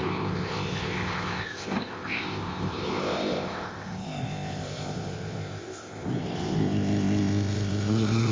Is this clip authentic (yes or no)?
no